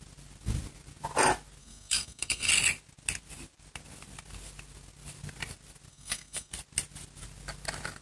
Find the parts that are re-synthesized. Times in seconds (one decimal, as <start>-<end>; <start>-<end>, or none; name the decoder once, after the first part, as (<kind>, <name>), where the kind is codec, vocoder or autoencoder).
1.6-2.5 (codec, SNAC); 5.9-6.5